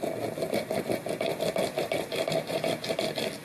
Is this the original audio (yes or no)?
yes